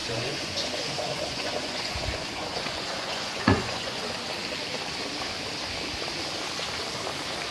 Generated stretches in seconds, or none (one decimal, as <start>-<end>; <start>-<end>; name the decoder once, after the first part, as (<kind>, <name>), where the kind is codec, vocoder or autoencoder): 0.0-4.1 (vocoder, Vocos)